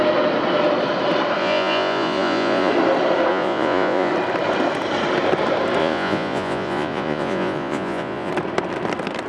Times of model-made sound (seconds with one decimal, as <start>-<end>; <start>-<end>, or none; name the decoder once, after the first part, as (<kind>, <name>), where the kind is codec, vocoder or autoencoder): 1.4-2.7 (vocoder, Vocos); 3.3-4.1; 5.8-8.3